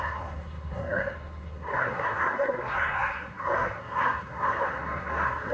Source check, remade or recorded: remade